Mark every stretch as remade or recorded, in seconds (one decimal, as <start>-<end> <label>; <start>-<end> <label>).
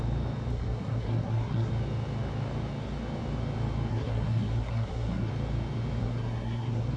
0.0-0.5 recorded; 0.5-1.7 remade; 1.7-3.9 recorded; 3.9-5.3 remade; 5.3-6.0 recorded; 6.0-7.0 remade